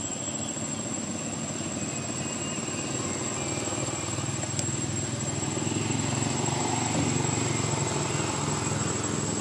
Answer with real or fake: real